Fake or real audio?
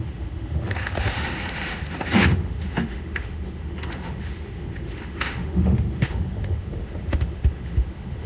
fake